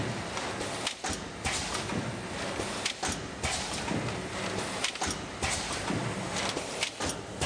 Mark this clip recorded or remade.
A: recorded